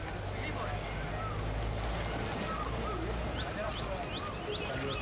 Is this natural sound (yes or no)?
yes